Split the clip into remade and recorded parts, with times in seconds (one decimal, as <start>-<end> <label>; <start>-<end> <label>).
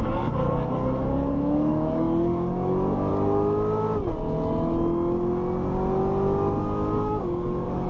0.0-3.1 remade; 3.1-6.6 recorded; 6.6-7.9 remade